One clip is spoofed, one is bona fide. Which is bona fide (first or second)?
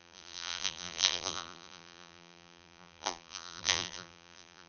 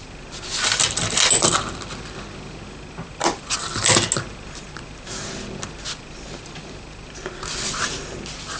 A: second